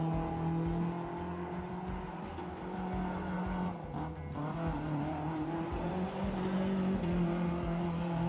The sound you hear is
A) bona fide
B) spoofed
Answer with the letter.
A